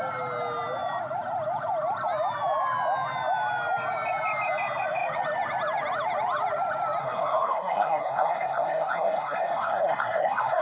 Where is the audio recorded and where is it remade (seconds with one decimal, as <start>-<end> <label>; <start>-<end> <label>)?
0.0-7.0 recorded; 7.0-10.6 remade